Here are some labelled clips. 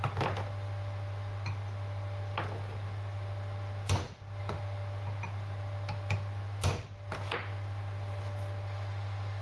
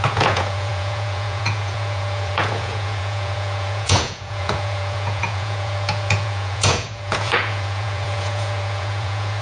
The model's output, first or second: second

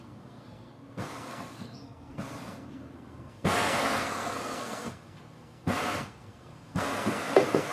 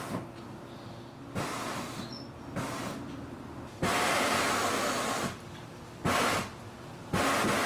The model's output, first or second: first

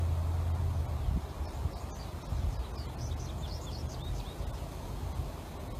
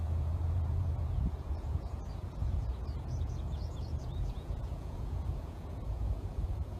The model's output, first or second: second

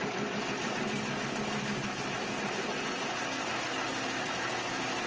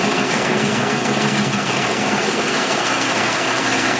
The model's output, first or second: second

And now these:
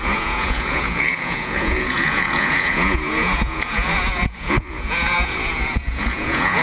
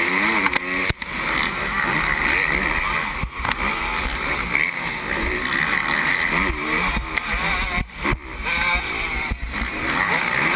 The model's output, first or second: first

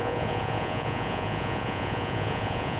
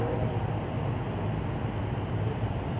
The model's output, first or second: first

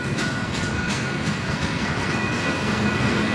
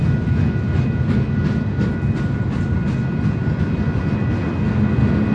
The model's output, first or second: first